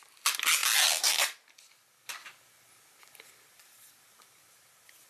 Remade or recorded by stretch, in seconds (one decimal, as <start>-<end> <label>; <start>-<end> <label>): 0.0-5.1 recorded